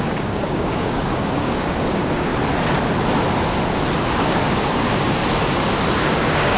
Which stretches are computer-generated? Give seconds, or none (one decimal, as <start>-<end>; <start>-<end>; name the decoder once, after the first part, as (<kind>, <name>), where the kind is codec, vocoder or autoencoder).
0.0-2.3 (codec, DAC); 4.1-5.2; 5.9-6.6